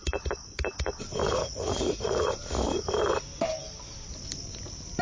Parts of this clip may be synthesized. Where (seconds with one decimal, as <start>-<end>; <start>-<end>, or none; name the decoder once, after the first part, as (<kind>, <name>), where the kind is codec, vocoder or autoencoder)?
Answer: 1.4-2.3 (vocoder, Vocos)